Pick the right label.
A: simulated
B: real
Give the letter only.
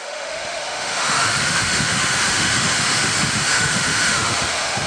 A